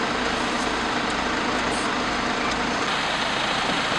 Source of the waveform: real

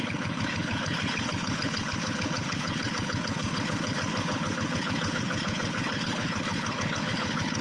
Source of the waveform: fake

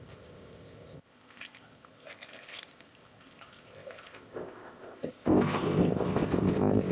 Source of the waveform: fake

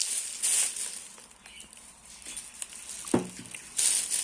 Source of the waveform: real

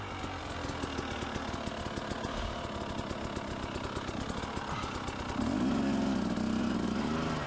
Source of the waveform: real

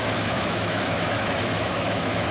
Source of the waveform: fake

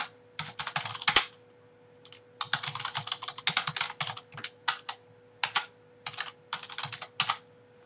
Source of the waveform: real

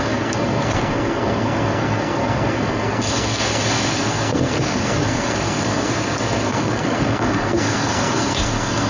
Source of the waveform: fake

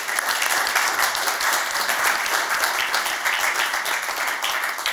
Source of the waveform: real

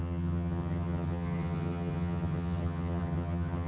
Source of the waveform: fake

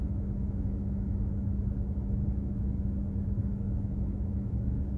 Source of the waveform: fake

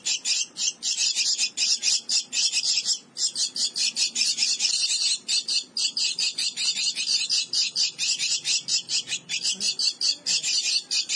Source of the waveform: real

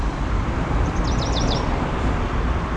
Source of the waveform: fake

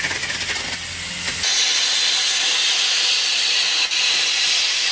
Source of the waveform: real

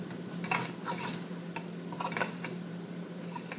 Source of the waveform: real